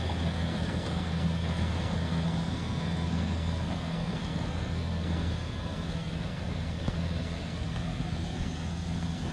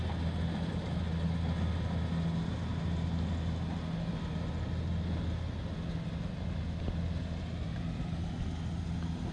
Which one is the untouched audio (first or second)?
second